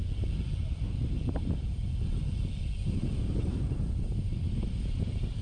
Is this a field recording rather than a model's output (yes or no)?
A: yes